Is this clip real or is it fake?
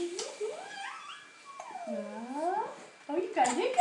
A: real